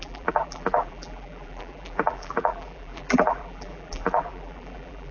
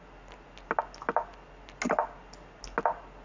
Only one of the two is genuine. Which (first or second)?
second